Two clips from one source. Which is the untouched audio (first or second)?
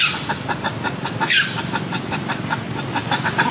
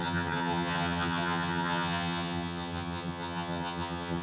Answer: first